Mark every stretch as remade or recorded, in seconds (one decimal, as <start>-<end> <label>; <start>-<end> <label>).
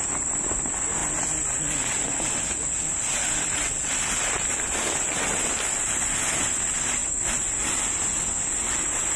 0.0-9.2 recorded